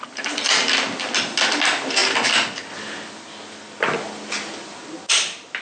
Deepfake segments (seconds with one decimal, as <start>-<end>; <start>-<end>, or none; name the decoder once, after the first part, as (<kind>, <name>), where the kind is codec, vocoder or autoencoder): none